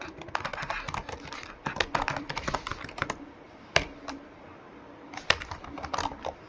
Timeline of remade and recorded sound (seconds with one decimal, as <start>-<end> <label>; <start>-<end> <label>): 0.0-0.5 remade; 0.5-2.2 recorded; 2.2-6.5 remade